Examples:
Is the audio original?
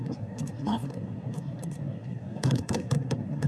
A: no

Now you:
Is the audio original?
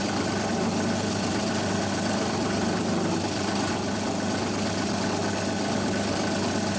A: yes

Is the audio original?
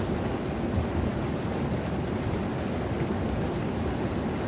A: yes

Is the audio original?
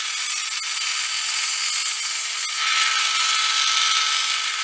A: yes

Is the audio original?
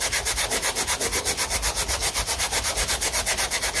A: yes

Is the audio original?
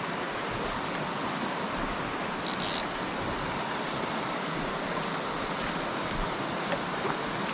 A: yes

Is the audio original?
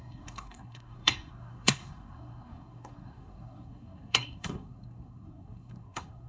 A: no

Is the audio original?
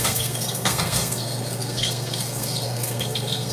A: no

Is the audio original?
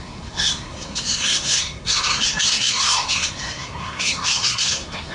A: no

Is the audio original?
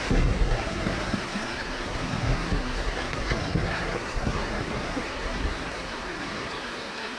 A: no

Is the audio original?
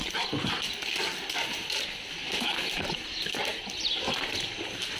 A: yes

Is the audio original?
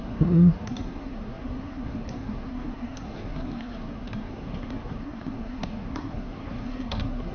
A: no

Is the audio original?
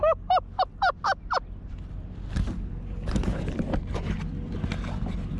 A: yes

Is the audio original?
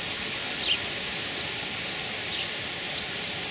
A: yes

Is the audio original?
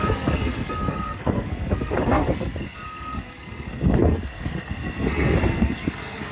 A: no